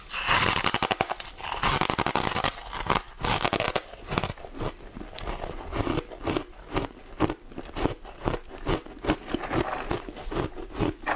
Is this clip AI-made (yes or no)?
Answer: no